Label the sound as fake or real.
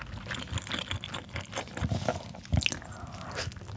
real